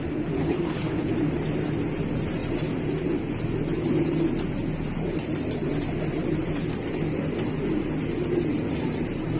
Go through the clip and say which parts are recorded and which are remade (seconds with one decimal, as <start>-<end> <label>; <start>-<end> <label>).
0.0-0.4 recorded; 0.4-1.1 remade; 1.1-9.4 recorded